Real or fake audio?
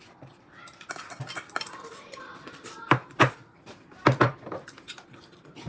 fake